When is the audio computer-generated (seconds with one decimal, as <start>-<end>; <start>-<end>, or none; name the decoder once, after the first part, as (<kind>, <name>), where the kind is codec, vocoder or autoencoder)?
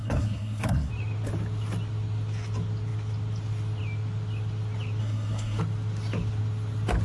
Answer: 0.0-0.9 (codec, SNAC); 5.0-5.6